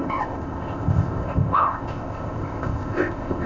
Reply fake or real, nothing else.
fake